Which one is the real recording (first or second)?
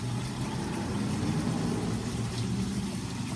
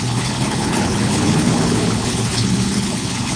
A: first